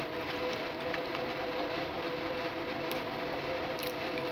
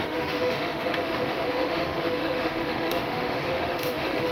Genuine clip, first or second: first